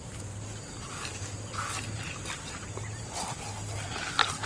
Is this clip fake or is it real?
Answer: real